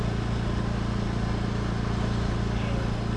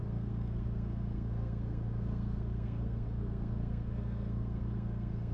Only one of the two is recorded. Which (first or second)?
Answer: first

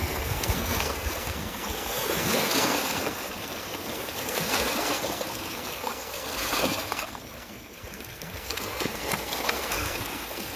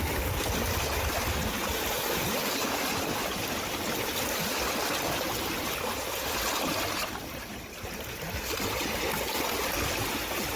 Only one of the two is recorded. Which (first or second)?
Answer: second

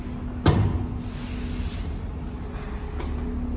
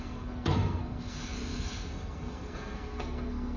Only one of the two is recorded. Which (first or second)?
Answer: first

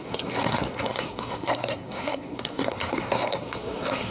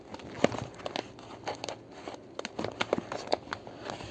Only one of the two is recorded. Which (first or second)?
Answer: second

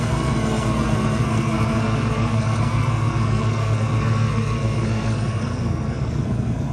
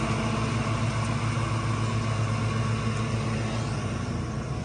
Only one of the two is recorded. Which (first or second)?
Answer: second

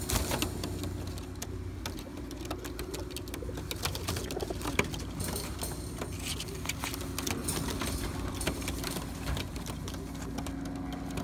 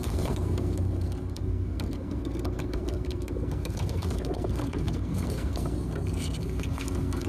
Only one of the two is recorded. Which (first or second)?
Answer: first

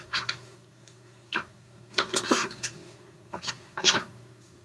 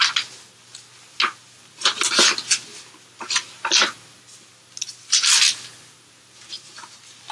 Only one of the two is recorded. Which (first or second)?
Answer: second